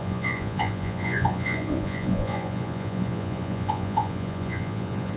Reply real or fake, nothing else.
fake